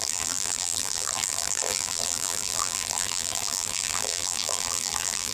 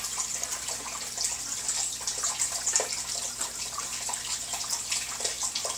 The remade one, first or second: first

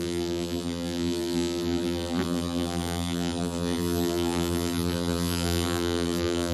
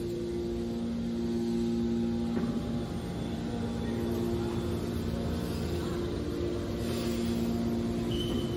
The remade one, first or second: first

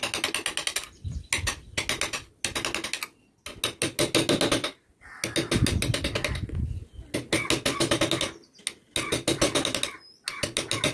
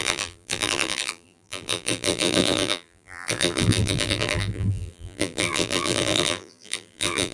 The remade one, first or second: second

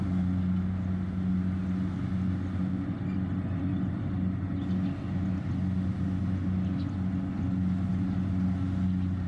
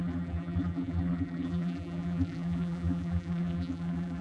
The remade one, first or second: second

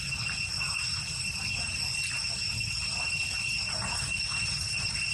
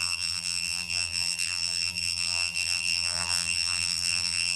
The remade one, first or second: second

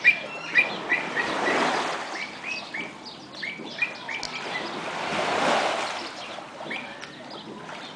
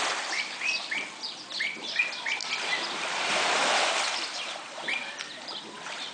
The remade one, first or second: second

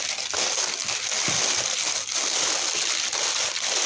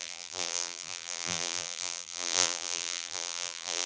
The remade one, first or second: second